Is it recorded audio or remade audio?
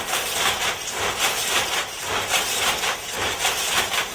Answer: recorded